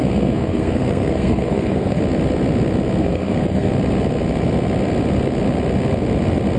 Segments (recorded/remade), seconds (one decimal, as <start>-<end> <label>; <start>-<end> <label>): 0.0-2.0 remade; 2.0-3.0 recorded; 3.0-3.7 remade; 3.7-6.6 recorded